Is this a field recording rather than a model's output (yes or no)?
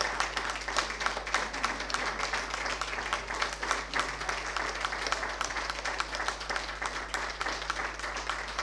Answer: yes